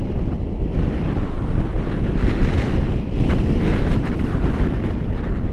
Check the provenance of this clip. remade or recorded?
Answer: recorded